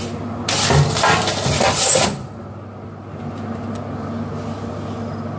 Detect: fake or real real